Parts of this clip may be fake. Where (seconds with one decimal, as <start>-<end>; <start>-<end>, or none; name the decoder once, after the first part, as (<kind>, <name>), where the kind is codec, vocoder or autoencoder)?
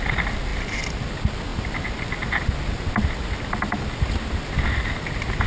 none